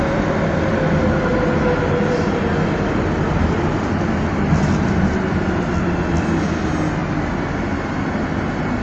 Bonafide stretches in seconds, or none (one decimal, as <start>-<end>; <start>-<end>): 0.0-8.8